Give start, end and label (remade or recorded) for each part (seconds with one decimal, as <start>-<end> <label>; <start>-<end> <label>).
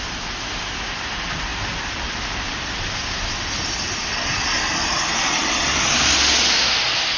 0.0-7.2 recorded